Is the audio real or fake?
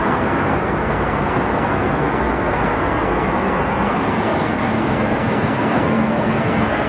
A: fake